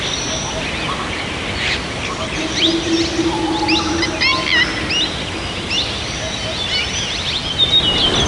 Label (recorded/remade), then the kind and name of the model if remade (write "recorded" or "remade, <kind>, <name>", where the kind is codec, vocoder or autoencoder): recorded